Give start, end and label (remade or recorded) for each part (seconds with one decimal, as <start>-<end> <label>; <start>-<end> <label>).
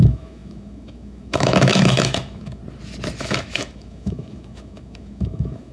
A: 0.0-2.6 remade; 2.6-3.2 recorded; 3.2-5.7 remade